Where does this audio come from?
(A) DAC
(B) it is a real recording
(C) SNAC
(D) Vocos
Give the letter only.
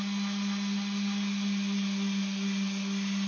B